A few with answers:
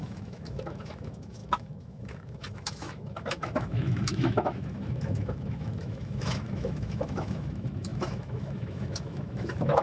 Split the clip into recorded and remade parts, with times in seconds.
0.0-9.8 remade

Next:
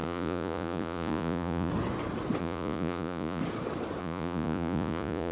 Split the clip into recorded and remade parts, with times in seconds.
0.0-1.7 remade; 1.7-2.4 recorded; 2.4-3.4 remade; 3.4-4.0 recorded; 4.0-5.3 remade

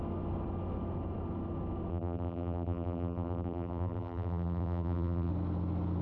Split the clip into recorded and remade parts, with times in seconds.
0.0-1.9 recorded; 1.9-5.3 remade; 5.3-6.0 recorded

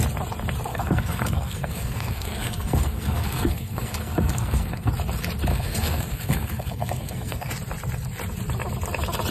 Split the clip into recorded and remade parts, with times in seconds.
0.0-0.7 recorded; 0.7-4.9 remade; 4.9-5.5 recorded; 5.5-7.5 remade; 7.5-9.3 recorded

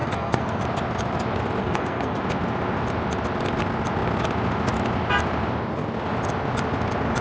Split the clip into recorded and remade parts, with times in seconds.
0.0-0.6 remade; 0.6-1.6 recorded; 1.6-2.2 remade; 2.2-7.2 recorded

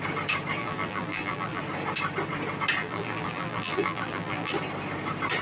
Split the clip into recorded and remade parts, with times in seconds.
0.0-0.6 recorded; 0.6-1.6 remade; 1.6-2.8 recorded; 2.8-4.5 remade; 4.5-5.4 recorded

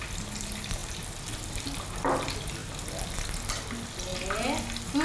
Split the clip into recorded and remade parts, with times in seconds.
0.0-0.8 recorded; 0.8-1.8 remade; 1.8-5.0 recorded

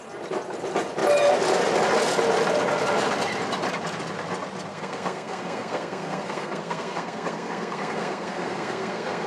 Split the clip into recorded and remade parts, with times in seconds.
0.0-4.7 recorded; 4.7-9.3 remade